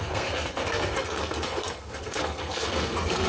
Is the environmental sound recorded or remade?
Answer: remade